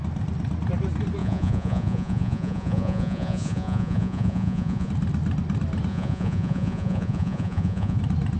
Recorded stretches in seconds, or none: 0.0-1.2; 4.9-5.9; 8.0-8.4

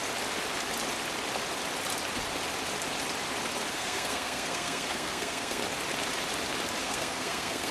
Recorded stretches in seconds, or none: 0.0-3.7; 5.6-6.8